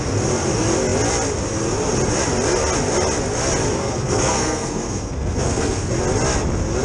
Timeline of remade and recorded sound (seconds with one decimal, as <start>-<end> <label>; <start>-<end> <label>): 0.0-3.8 recorded; 3.8-5.9 remade; 5.9-6.8 recorded